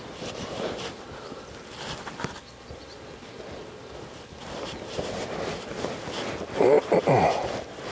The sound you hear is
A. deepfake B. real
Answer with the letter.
B